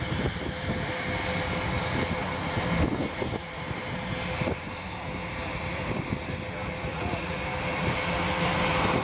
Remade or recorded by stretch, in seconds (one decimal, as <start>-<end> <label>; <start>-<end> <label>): 0.0-6.9 recorded; 6.9-7.4 remade; 7.4-9.0 recorded